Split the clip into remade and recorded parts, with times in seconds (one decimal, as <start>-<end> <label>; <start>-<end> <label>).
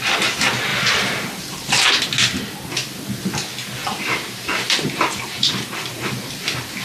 0.0-0.7 recorded; 0.7-1.9 remade; 1.9-3.8 recorded; 3.8-5.9 remade; 5.9-6.8 recorded